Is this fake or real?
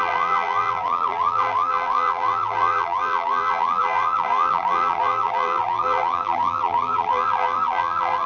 fake